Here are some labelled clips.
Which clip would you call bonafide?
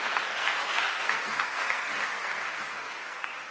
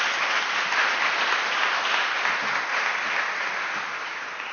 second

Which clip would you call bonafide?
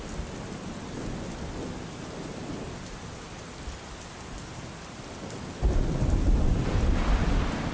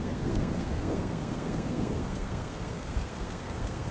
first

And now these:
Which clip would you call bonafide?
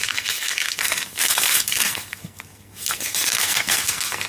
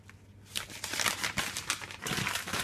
second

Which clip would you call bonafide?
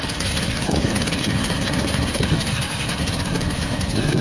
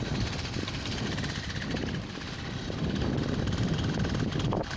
second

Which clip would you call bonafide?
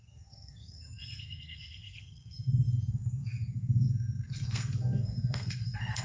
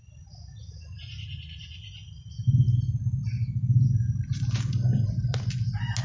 second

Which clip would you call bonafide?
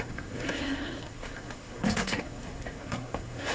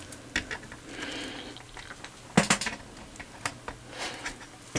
second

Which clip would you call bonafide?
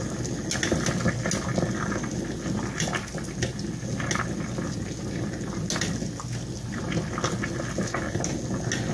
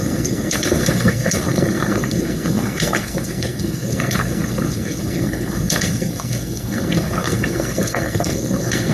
first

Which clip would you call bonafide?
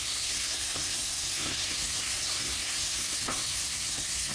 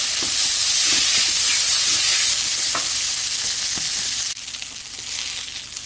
second